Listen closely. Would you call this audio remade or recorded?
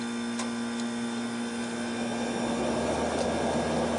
recorded